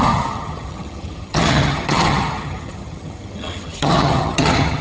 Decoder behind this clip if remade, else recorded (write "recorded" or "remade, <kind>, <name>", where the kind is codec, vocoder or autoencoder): remade, vocoder, HiFi-GAN